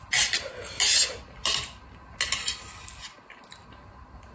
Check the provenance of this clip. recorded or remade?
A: recorded